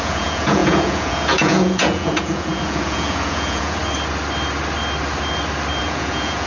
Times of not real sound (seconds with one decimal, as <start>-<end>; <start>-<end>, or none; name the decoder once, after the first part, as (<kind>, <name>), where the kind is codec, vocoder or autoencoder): 0.0-3.8 (vocoder, Vocos); 5.8-6.5